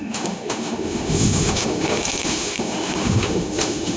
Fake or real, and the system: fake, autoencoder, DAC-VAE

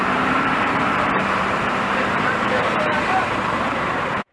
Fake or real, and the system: fake, vocoder, BigVGAN v2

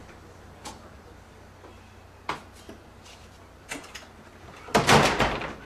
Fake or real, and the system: real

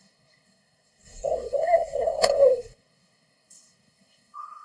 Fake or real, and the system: fake, codec, SNAC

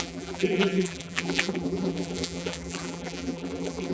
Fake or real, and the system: fake, vocoder, BigVGAN v2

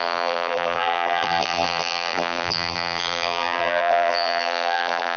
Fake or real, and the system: fake, vocoder, BigVGAN v2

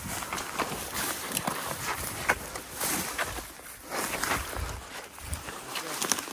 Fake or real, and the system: real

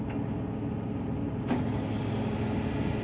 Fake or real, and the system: real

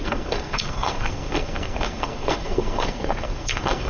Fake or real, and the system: fake, codec, SNAC